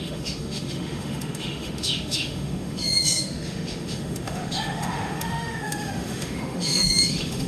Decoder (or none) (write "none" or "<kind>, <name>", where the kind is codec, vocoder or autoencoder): autoencoder, DAC-VAE